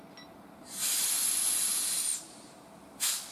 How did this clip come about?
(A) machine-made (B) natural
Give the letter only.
B